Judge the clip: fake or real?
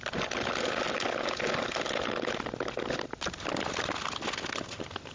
real